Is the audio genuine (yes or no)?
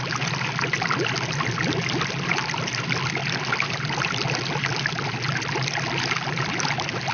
yes